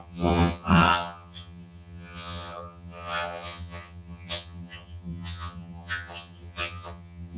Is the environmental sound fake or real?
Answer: fake